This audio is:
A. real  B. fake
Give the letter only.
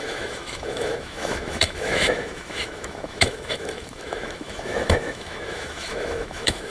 B